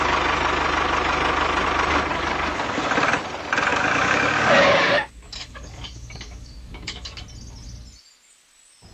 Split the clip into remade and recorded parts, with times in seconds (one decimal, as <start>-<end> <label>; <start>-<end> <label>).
0.0-2.1 recorded; 2.1-2.9 remade; 2.9-3.7 recorded; 3.7-7.2 remade; 7.2-8.9 recorded